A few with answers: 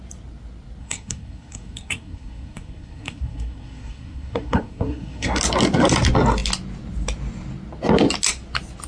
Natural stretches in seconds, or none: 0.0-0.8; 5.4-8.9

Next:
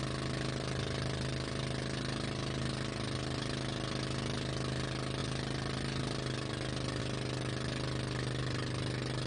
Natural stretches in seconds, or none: 0.0-9.3

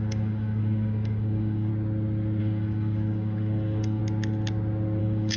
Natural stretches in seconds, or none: 1.7-2.4; 4.0-5.0

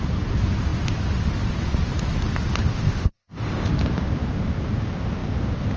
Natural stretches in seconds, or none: 0.0-2.6; 3.7-5.8